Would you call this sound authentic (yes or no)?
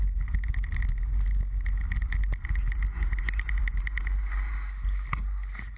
yes